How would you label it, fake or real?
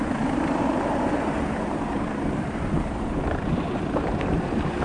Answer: fake